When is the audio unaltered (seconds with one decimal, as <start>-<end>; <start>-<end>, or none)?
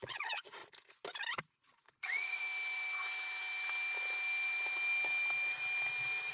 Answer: 0.6-1.4; 2.4-6.3